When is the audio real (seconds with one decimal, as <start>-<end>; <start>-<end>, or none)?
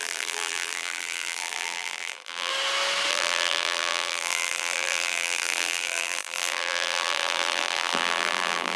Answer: 2.5-3.1